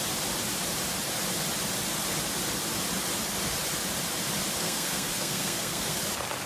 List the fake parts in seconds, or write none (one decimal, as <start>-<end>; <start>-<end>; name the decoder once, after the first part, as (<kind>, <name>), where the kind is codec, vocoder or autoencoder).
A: 4.6-6.0 (codec, SNAC)